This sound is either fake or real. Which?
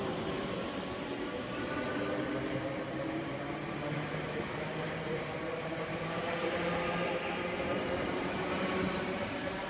fake